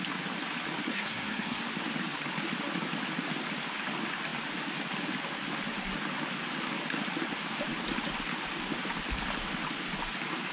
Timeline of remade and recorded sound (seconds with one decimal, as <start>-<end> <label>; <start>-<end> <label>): 0.0-0.9 recorded; 0.9-1.6 remade; 1.6-10.5 recorded